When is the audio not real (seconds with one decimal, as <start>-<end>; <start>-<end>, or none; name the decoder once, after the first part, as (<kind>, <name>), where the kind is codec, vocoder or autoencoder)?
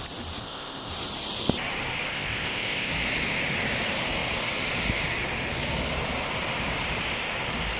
0.4-0.9 (codec, ZipCodec); 2.1-2.9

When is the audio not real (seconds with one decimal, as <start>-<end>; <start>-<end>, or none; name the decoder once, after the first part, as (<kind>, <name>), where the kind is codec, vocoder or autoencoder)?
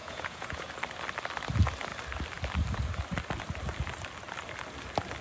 0.0-0.7 (vocoder, Vocos)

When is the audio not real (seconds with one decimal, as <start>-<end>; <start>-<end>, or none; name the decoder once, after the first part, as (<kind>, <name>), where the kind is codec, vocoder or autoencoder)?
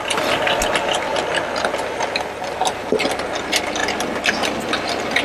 none